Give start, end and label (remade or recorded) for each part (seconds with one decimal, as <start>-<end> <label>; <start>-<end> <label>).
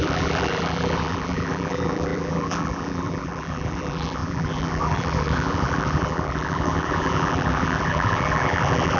0.0-9.0 remade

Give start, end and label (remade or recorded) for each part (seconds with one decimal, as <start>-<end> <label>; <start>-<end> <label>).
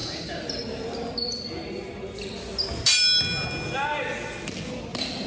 0.0-5.3 recorded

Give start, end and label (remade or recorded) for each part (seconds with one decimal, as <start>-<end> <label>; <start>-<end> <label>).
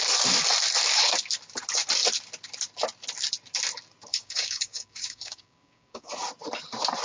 0.0-4.1 recorded; 4.1-6.1 remade; 6.1-7.0 recorded